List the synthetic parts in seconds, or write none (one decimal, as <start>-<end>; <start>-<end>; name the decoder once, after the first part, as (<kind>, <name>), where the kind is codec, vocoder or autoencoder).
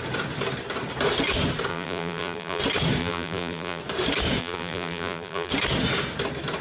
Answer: 1.7-2.6 (vocoder, BigVGAN v2); 3.0-3.8; 4.4-5.5